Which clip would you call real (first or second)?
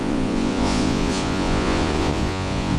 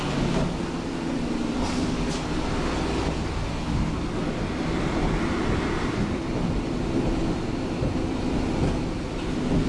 second